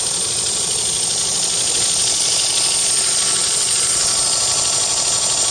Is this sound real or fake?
real